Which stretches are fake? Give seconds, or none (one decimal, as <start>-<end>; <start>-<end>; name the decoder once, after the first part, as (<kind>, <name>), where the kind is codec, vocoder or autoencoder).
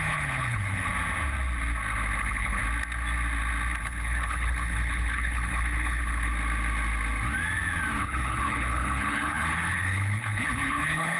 0.0-0.9 (codec, HILCodec); 2.2-2.6; 3.8-6.3; 8.0-11.2